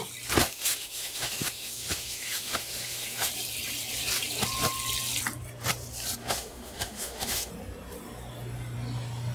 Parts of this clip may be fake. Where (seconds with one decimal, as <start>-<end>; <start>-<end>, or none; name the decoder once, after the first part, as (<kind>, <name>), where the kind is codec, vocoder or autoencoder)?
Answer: 0.4-3.3 (autoencoder, DAC-VAE); 6.2-7.5